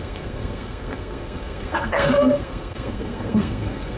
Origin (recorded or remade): remade